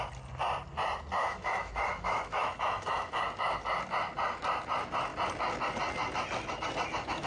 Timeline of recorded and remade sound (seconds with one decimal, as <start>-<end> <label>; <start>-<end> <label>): 0.0-1.2 recorded; 1.2-3.2 remade; 3.2-7.3 recorded